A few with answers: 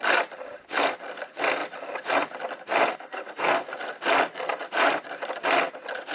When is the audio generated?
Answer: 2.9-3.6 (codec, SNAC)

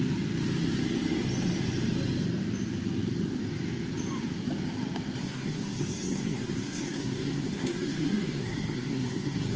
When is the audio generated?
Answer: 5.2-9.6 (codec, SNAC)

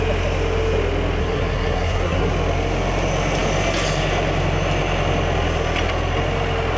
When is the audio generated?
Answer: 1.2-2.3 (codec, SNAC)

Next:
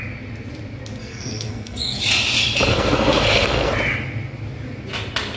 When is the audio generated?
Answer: 1.0-2.0 (codec, SNAC); 2.7-3.7

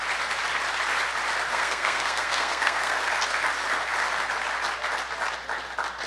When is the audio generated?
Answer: 1.5-3.1 (codec, SNAC)

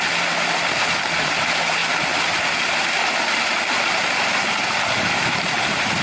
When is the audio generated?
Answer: none